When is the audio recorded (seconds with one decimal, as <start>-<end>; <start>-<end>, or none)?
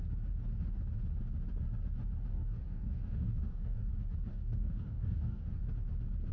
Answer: 0.0-2.3; 3.9-4.3; 5.6-6.3